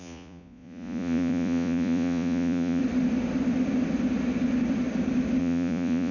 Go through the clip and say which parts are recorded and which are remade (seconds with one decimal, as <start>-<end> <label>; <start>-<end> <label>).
0.0-2.8 remade; 2.8-5.4 recorded; 5.4-6.1 remade